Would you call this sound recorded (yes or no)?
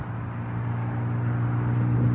yes